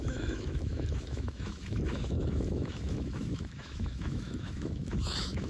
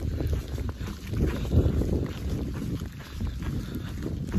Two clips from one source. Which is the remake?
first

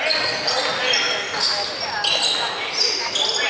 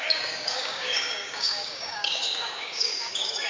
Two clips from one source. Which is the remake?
second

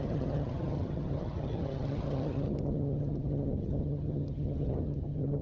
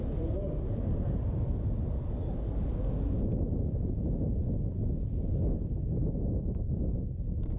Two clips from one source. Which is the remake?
first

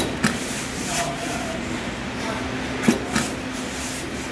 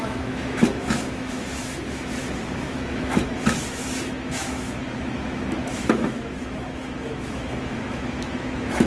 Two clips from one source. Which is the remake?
second